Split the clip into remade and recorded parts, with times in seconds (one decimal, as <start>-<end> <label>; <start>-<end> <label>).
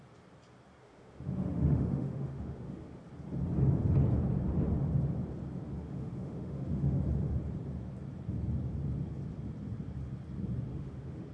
0.0-0.8 recorded; 0.8-3.0 remade; 3.0-5.8 recorded; 5.8-7.0 remade; 7.0-10.7 recorded; 10.7-11.3 remade